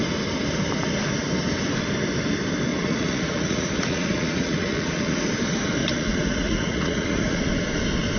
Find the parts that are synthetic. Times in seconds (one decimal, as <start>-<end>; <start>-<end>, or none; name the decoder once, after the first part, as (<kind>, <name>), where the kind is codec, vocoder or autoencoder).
2.7-5.2 (vocoder, Vocos); 5.8-7.4